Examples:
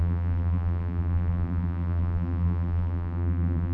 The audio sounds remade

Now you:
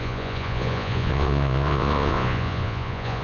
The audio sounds remade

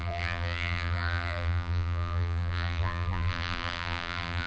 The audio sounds remade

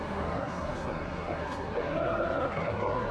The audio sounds remade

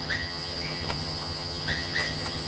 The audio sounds remade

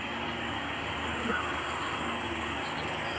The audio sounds remade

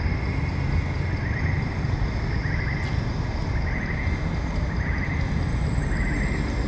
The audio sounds recorded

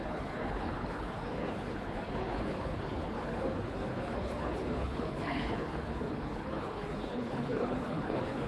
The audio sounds remade